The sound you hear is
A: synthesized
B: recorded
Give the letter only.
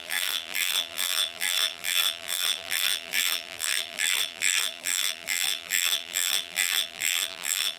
A